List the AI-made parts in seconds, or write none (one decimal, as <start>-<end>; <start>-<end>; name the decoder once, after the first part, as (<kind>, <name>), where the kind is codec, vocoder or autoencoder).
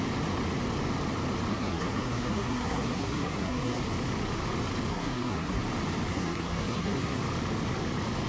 1.5-3.8 (codec, SNAC); 4.9-5.6; 6.1-7.2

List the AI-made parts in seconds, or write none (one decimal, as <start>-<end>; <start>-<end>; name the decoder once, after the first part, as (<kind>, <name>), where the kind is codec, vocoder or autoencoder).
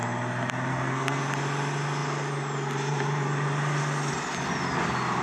0.7-1.2 (codec, SNAC)